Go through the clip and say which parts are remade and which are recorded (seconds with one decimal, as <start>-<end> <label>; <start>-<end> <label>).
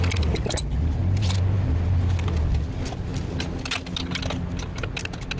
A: 0.0-5.4 recorded